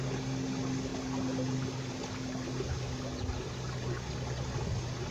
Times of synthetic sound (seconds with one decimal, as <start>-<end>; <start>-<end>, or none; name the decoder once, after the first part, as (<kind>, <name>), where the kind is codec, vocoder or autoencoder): none